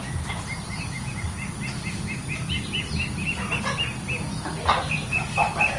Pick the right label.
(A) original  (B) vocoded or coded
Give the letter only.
A